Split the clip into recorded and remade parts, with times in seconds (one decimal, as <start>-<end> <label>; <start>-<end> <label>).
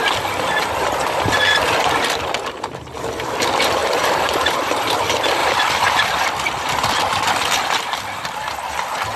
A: 0.0-3.8 recorded; 3.8-4.7 remade; 4.7-9.2 recorded